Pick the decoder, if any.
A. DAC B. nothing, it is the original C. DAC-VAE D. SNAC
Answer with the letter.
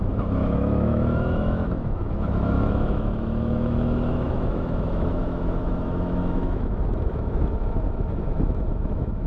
C